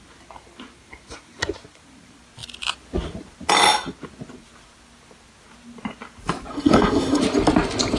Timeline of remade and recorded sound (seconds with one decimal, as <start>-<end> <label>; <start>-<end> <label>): 0.0-6.5 recorded; 6.5-7.2 remade; 7.2-8.0 recorded